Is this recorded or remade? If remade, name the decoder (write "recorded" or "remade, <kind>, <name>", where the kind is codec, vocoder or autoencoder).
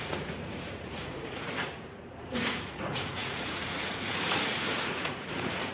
remade, vocoder, Vocos